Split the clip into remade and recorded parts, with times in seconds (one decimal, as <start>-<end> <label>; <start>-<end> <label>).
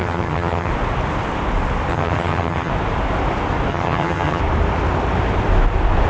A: 0.0-0.7 remade; 0.7-1.9 recorded; 1.9-2.7 remade; 2.7-3.7 recorded; 3.7-4.4 remade; 4.4-6.1 recorded